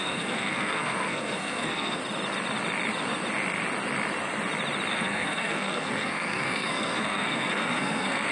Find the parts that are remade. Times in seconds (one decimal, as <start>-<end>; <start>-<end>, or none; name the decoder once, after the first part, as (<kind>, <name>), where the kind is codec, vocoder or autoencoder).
0.0-2.0 (codec, SNAC); 4.9-8.3